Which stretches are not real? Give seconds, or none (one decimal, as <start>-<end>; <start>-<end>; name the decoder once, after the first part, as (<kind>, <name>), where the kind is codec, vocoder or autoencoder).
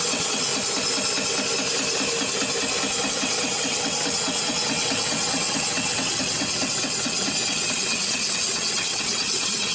0.0-0.5 (vocoder, WaveNeXt); 3.1-9.7